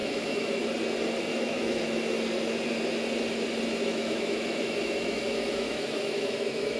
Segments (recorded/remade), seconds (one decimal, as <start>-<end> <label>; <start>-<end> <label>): 0.0-0.5 remade; 0.5-1.3 recorded; 1.3-1.8 remade; 1.8-3.9 recorded; 3.9-6.8 remade